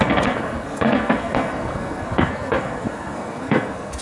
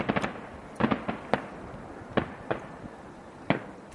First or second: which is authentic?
second